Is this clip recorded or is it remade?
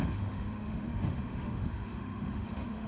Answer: remade